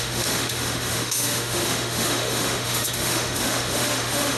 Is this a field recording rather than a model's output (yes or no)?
no